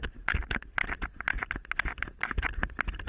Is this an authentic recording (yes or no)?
yes